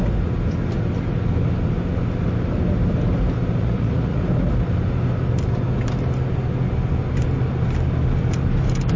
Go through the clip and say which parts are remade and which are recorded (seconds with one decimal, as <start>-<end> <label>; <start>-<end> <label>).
0.0-3.6 recorded; 3.6-4.2 remade; 4.2-9.0 recorded